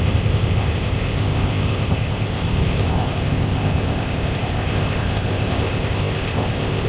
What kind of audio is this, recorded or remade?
remade